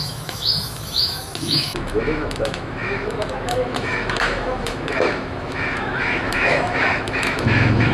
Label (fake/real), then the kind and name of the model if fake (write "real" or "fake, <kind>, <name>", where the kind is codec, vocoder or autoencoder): fake, autoencoder, DAC-VAE